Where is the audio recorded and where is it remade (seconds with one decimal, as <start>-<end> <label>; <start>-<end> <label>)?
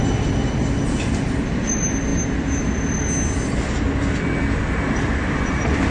0.0-5.9 recorded